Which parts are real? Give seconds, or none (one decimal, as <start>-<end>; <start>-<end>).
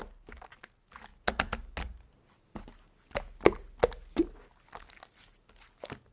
0.0-6.1